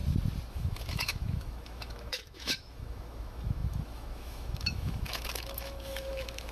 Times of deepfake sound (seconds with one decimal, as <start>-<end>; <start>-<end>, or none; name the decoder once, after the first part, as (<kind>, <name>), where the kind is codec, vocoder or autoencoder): 0.5-6.5 (autoencoder, DAC-VAE)